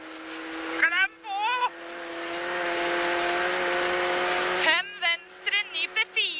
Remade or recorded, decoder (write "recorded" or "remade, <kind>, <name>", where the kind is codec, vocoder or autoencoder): recorded